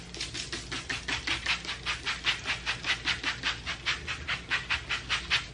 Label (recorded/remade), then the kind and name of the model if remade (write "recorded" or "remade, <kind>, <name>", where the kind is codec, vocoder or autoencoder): recorded